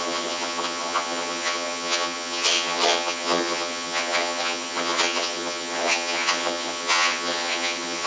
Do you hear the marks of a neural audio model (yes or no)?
yes